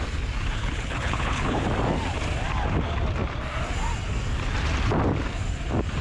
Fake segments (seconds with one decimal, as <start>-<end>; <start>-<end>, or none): 0.6-1.6